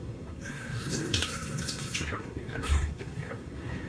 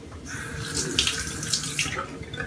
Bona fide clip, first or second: second